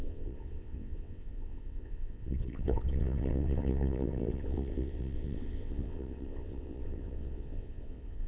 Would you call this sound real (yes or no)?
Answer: no